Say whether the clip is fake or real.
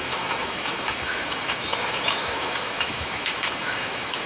fake